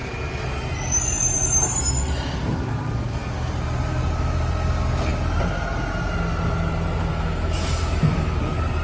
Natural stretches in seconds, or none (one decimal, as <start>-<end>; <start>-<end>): 0.0-7.1; 8.4-8.8